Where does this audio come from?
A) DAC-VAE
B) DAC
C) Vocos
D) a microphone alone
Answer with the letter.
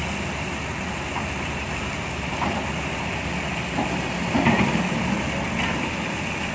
D